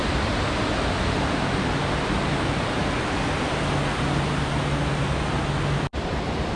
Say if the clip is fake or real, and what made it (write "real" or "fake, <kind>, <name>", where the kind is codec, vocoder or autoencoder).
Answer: real